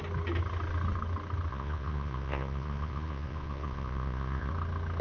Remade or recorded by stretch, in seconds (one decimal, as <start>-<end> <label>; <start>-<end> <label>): 0.0-1.5 recorded; 1.5-4.5 remade; 4.5-5.0 recorded